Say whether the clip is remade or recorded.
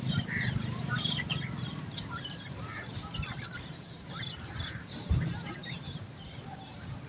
remade